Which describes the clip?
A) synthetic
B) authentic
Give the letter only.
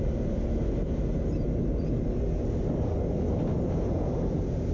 B